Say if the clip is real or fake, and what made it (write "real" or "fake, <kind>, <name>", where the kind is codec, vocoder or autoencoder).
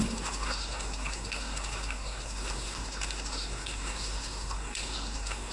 fake, codec, SNAC